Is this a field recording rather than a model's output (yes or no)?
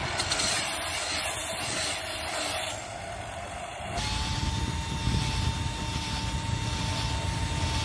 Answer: yes